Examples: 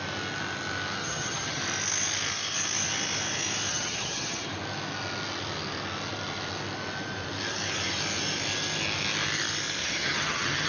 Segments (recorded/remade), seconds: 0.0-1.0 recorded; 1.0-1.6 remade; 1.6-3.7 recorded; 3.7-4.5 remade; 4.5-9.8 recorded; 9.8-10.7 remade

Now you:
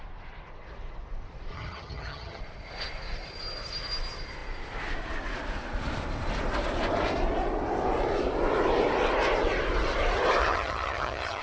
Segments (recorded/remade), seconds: 0.0-1.5 recorded; 1.5-2.4 remade; 2.4-10.4 recorded; 10.4-11.4 remade

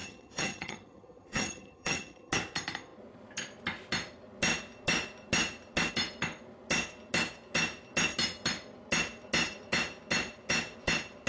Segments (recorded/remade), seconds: 0.0-2.3 remade; 2.3-11.3 recorded

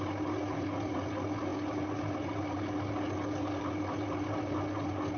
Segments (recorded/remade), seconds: 0.0-5.2 recorded

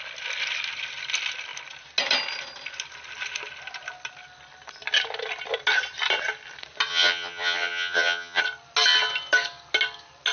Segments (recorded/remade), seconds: 0.0-6.9 recorded; 6.9-8.4 remade; 8.4-10.3 recorded

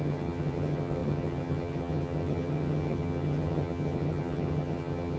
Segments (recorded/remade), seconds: 0.0-5.2 remade

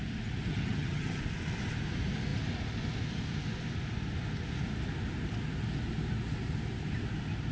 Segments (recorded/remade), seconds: 0.0-0.5 recorded; 0.5-1.2 remade; 1.2-7.5 recorded